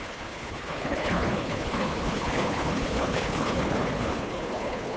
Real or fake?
fake